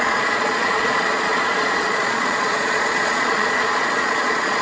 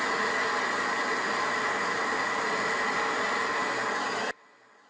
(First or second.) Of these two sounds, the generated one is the first